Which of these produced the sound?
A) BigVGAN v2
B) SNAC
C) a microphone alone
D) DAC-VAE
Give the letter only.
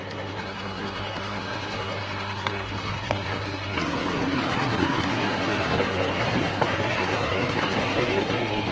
B